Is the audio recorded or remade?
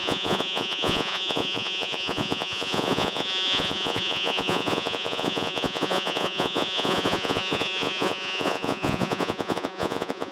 remade